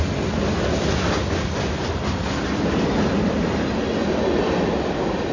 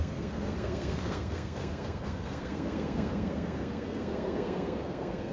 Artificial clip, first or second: second